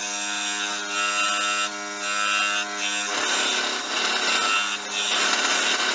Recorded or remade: recorded